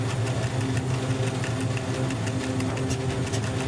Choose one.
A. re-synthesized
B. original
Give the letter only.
B